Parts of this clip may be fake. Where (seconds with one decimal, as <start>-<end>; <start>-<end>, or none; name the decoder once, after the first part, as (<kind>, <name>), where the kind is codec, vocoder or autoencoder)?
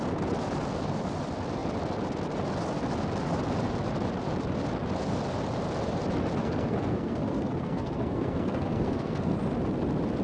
6.4-9.4 (codec, SNAC)